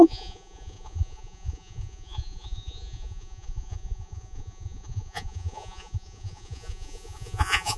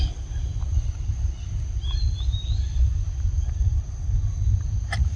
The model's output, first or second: first